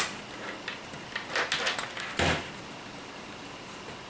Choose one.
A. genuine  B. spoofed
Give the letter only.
A